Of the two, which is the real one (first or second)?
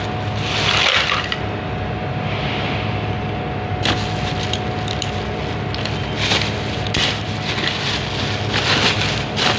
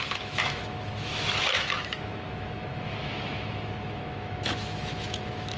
first